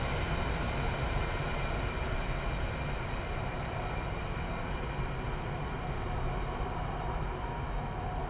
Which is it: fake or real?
real